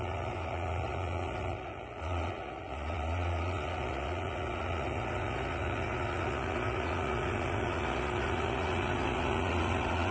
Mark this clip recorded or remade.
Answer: remade